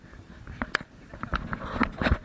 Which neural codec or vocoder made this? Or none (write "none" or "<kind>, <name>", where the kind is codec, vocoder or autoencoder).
none